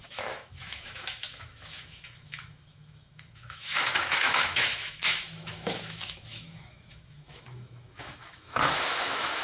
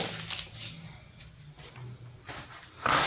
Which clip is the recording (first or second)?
second